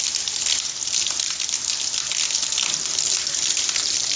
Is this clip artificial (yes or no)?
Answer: no